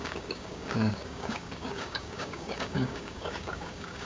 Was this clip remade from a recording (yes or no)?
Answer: yes